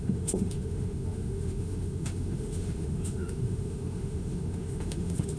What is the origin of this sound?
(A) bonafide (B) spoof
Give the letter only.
B